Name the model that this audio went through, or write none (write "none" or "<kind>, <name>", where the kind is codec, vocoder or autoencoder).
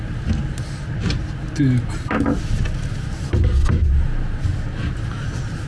none